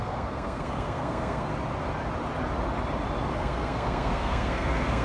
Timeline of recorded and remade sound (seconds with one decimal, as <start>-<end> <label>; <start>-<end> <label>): 0.0-1.5 remade; 1.5-3.3 recorded; 3.3-5.0 remade